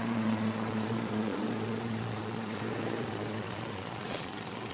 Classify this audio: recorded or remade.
remade